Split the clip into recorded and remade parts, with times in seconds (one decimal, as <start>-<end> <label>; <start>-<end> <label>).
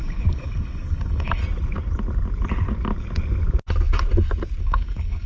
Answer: 0.0-1.4 remade; 1.4-4.6 recorded; 4.6-5.3 remade